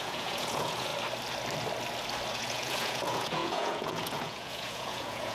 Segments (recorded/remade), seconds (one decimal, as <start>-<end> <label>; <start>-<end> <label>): 0.0-0.9 remade; 0.9-2.3 recorded; 2.3-5.3 remade